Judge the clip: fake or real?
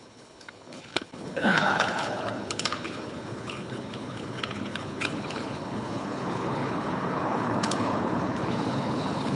fake